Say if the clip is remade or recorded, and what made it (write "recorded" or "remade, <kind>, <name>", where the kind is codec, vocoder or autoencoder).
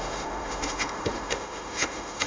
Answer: remade, autoencoder, DAC-VAE